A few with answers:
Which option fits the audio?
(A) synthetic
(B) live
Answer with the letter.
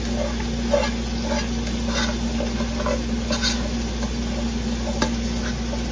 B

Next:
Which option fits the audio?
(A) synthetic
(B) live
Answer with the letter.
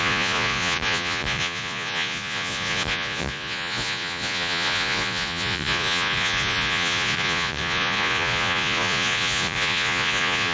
A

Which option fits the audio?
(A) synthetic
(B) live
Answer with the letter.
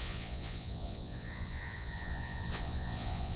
A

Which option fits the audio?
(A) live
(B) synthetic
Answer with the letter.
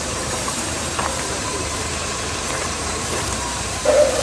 B